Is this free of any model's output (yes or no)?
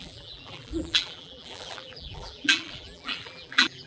no